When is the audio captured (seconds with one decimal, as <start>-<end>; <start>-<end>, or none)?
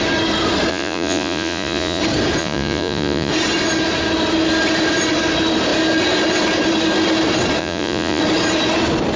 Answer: 0.0-0.7; 2.0-2.4; 3.3-7.6; 8.2-9.2